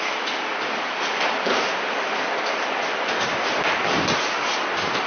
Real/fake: real